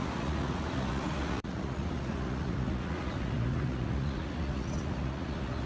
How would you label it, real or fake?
fake